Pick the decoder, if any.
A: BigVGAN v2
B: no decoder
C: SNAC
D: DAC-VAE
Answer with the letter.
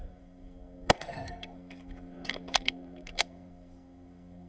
C